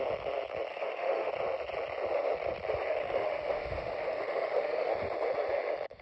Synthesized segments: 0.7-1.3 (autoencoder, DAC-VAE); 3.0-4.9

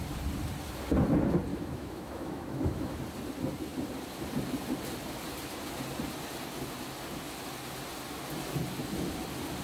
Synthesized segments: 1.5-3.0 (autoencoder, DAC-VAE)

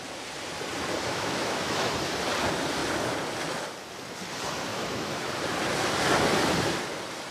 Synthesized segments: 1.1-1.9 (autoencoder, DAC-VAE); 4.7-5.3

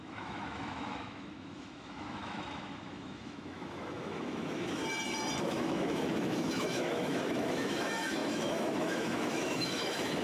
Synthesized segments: 0.0-4.8 (autoencoder, DAC-VAE); 5.4-10.2